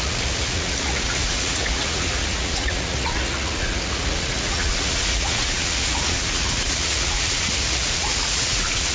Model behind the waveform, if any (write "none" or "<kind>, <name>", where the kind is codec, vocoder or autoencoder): vocoder, Vocos